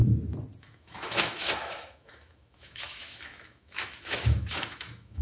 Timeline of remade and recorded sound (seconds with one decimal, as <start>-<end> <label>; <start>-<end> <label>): 0.0-0.6 recorded; 0.6-5.2 remade